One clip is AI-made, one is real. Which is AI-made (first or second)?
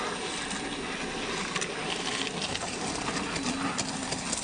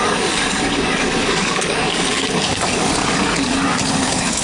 second